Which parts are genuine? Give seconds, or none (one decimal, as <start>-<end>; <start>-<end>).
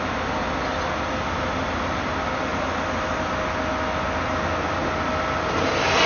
0.0-6.1